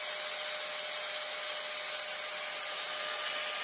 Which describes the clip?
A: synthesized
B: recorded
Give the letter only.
B